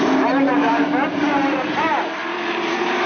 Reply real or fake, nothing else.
fake